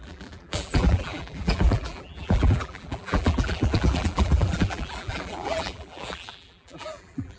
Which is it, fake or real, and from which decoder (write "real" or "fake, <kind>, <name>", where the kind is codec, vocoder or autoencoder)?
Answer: fake, vocoder, BigVGAN v2